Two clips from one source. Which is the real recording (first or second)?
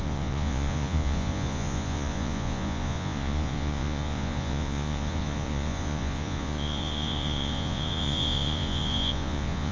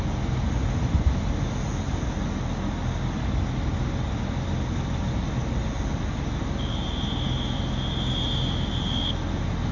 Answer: second